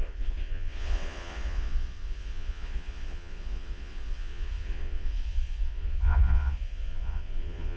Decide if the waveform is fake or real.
fake